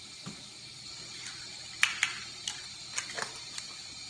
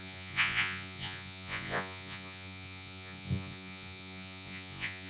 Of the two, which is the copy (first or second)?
second